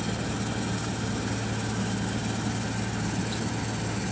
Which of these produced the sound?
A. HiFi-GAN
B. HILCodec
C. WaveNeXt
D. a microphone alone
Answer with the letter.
D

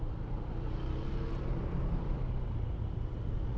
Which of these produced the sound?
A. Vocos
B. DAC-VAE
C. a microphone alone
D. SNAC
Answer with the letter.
C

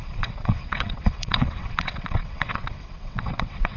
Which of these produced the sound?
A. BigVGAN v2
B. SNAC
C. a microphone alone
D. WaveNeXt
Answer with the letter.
D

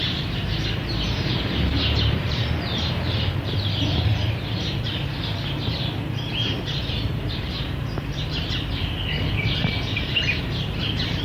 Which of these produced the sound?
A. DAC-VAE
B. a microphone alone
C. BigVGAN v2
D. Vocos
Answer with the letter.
C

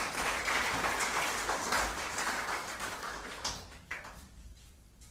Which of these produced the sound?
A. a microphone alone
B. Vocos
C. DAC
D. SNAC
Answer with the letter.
C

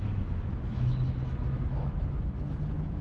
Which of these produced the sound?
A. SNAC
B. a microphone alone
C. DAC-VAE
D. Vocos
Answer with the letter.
C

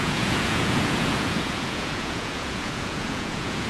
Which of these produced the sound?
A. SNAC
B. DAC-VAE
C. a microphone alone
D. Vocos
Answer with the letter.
D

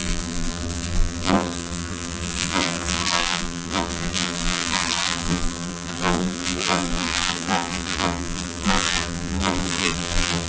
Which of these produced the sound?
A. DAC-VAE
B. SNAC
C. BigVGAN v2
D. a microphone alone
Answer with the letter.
C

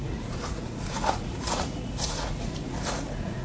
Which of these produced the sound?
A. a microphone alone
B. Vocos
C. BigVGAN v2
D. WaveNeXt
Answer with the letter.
B